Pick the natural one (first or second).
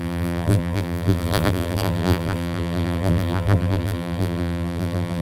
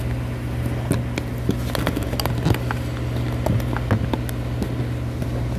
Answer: second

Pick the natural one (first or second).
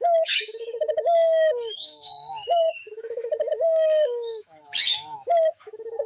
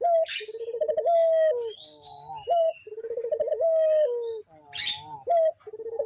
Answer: second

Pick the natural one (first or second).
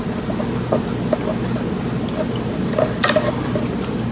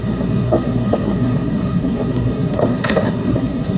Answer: first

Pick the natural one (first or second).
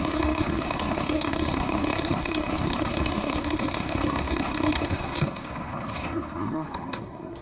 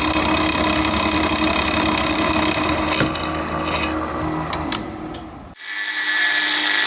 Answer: second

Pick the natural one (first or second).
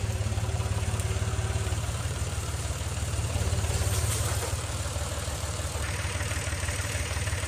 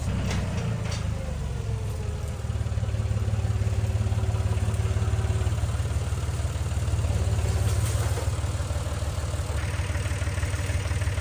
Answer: second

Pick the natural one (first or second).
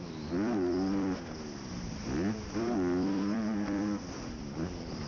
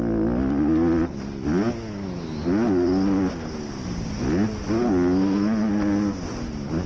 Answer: second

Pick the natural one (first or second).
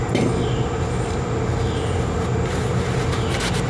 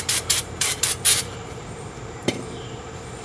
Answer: first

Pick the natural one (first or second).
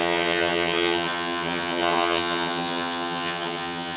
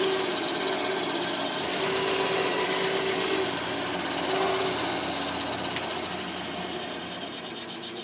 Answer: second